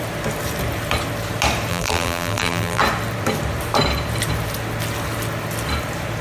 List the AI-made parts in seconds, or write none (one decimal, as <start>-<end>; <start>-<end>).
1.7-2.8